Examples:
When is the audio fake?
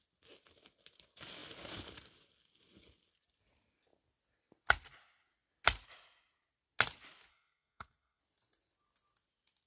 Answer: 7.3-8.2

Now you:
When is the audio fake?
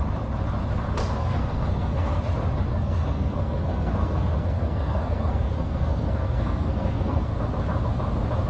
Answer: 1.2-2.2; 2.7-7.4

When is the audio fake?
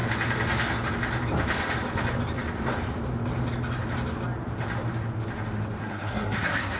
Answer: 5.8-6.8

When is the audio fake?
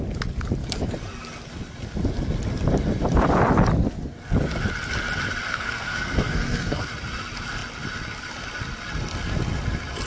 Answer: 5.5-6.9